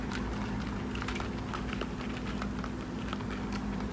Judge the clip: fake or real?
real